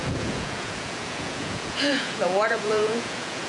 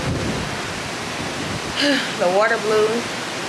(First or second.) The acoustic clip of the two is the second